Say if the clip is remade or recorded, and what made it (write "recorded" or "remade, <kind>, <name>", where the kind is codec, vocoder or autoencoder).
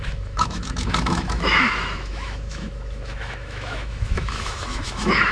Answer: remade, autoencoder, DAC-VAE